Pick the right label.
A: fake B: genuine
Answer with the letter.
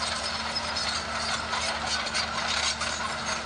B